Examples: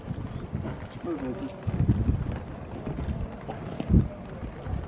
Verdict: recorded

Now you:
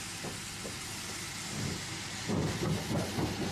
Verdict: recorded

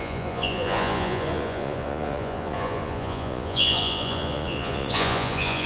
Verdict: remade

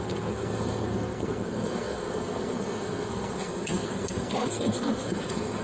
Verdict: remade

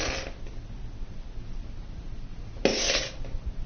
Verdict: recorded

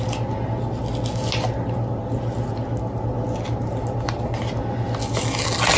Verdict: recorded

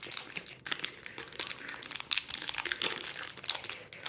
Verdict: recorded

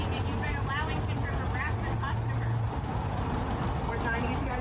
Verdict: recorded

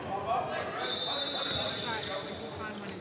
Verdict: recorded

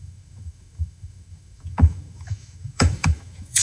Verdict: remade